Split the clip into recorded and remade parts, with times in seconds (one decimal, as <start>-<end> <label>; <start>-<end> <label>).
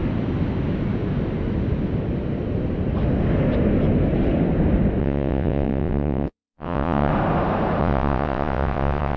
0.0-5.0 recorded; 5.0-7.1 remade; 7.1-7.8 recorded; 7.8-9.2 remade